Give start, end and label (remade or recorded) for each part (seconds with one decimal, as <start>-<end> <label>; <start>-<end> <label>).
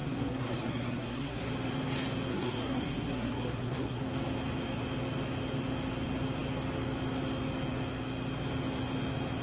0.0-1.5 remade; 1.5-2.3 recorded; 2.3-4.0 remade; 4.0-9.4 recorded